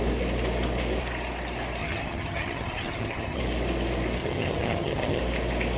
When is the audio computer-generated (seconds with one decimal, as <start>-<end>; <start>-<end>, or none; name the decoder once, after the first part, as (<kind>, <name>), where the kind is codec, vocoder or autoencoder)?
1.8-3.4 (vocoder, HiFi-GAN); 4.2-5.2